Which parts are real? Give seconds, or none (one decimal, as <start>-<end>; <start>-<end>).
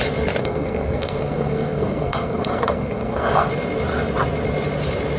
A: 0.0-0.4; 3.5-5.2